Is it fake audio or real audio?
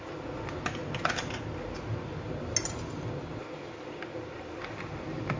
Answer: real